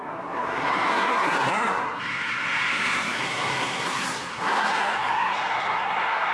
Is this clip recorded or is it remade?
remade